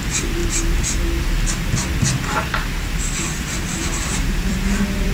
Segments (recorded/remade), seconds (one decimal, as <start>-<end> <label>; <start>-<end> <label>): 0.0-3.7 recorded; 3.7-5.1 remade